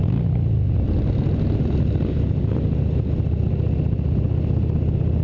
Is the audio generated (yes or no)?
no